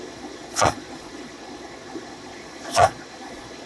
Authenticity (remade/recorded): remade